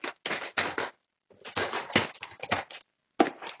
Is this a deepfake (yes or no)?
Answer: no